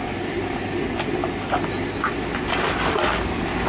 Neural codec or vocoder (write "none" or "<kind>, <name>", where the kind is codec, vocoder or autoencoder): none